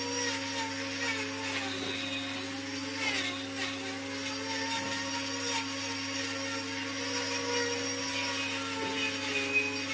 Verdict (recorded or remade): recorded